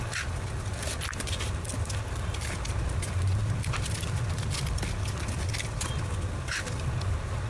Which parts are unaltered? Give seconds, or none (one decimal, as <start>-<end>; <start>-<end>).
0.0-7.5